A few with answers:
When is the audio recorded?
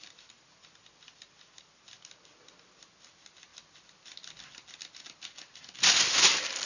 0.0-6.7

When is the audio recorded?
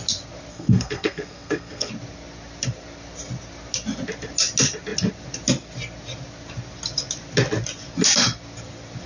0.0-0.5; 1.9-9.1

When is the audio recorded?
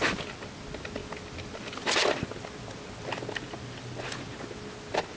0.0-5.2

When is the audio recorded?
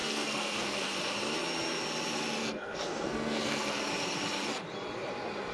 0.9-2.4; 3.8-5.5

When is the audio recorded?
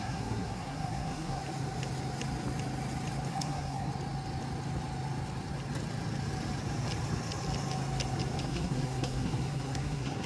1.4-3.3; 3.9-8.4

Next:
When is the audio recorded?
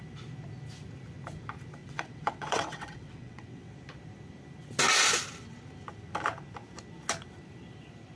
0.0-1.8; 3.7-8.2